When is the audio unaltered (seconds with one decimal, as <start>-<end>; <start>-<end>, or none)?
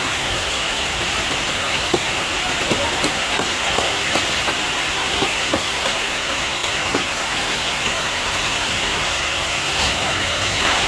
0.9-1.5; 2.3-3.1; 4.1-4.9